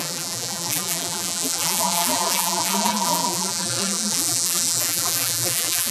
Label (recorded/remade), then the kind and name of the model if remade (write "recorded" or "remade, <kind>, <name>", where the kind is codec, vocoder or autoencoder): remade, vocoder, BigVGAN v2